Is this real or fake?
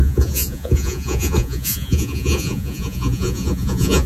fake